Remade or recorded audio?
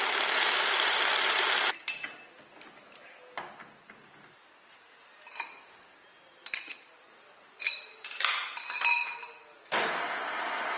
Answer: recorded